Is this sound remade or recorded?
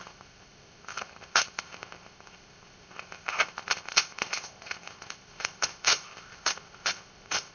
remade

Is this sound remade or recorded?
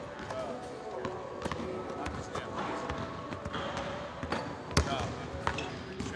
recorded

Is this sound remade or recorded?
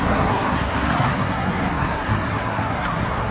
remade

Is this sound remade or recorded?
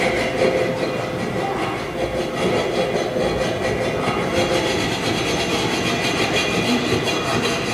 recorded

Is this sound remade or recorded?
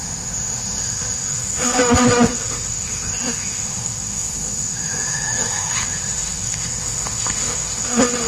remade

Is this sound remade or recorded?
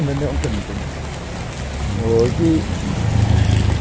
recorded